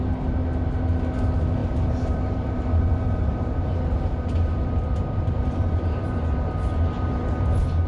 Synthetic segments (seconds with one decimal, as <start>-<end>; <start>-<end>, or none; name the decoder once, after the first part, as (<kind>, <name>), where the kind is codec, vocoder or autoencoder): 1.6-6.3 (vocoder, BigVGAN v2)